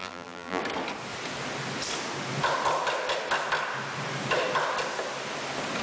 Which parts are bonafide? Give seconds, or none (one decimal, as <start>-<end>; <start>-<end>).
0.6-5.8